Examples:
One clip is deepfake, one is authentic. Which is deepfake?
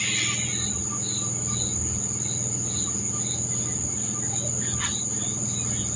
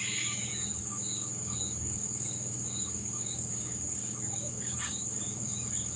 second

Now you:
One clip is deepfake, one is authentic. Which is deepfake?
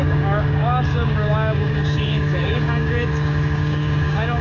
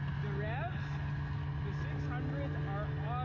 first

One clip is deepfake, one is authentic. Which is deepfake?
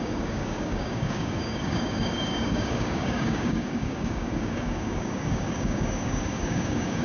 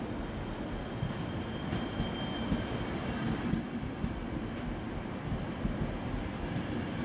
first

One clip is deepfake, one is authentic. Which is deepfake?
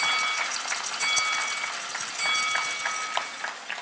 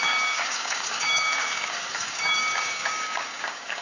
second